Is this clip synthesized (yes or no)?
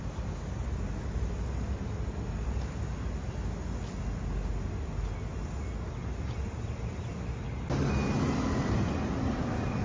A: no